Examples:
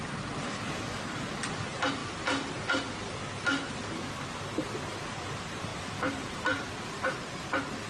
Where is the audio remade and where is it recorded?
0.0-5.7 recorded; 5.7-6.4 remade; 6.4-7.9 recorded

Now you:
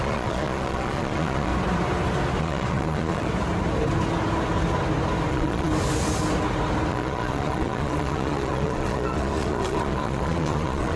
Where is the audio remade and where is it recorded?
0.0-1.5 remade; 1.5-2.4 recorded; 2.4-3.3 remade; 3.3-5.3 recorded; 5.3-5.7 remade; 5.7-6.9 recorded; 6.9-11.0 remade

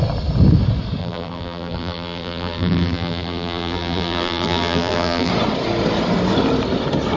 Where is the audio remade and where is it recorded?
0.0-1.0 recorded; 1.0-5.3 remade; 5.3-7.2 recorded